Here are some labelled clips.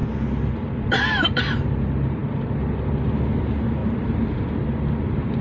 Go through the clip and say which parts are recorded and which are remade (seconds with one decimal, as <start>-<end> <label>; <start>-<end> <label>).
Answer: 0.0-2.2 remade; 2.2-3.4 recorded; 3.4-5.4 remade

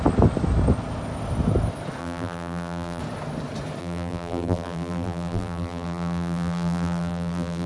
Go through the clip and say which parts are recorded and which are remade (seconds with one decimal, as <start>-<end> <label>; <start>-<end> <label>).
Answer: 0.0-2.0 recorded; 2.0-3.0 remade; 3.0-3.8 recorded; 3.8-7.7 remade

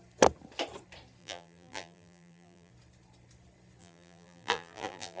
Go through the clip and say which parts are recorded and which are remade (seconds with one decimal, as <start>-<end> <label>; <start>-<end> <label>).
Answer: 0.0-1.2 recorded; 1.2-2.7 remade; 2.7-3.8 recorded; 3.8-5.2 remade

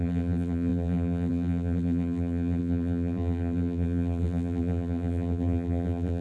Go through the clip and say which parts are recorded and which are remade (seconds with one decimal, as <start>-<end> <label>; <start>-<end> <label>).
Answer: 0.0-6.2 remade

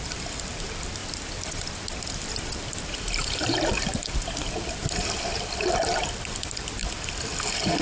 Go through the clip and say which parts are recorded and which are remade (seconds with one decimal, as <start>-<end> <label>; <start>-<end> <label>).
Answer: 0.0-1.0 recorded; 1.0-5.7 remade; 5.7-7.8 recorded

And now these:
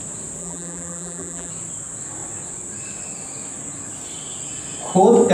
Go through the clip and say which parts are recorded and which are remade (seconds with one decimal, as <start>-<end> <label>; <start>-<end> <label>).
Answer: 0.0-0.4 recorded; 0.4-1.5 remade; 1.5-5.3 recorded

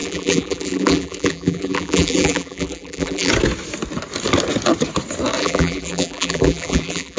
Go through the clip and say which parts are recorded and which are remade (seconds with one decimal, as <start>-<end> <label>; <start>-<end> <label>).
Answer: 0.0-3.3 remade; 3.3-5.4 recorded; 5.4-7.2 remade